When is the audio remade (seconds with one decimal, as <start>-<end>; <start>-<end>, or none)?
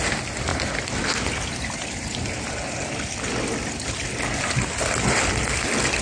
none